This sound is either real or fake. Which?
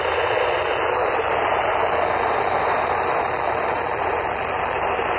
real